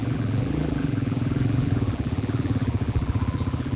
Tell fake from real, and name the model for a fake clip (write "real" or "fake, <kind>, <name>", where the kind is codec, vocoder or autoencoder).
fake, vocoder, BigVGAN v2